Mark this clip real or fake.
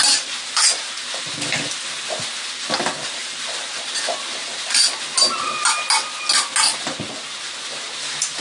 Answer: real